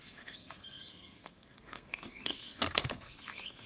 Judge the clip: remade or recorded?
remade